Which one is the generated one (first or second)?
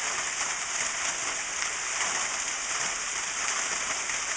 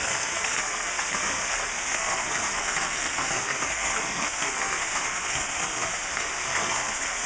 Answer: second